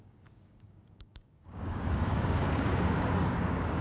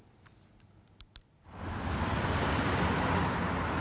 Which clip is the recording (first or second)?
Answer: second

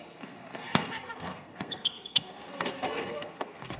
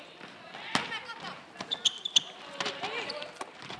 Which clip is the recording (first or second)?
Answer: second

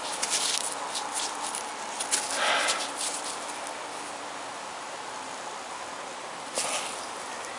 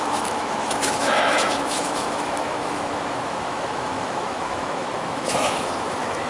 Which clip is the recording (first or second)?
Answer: first